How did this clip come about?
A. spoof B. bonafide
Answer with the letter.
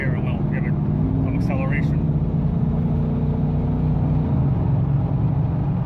B